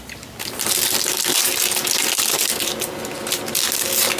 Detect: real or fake real